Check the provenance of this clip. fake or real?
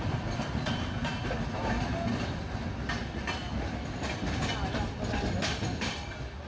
real